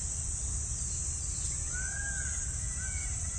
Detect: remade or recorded recorded